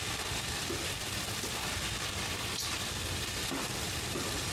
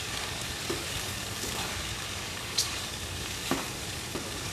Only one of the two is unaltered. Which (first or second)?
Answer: first